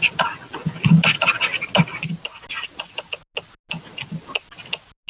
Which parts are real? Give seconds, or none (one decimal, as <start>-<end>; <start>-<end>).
0.0-5.1